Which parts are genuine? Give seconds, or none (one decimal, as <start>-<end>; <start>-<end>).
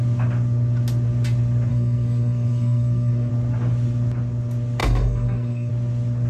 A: 0.0-1.7; 3.3-4.8; 5.7-6.3